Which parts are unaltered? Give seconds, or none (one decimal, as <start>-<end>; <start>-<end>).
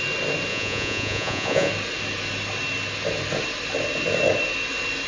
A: 0.0-0.5; 1.7-5.1